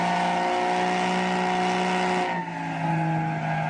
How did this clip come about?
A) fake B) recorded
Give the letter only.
B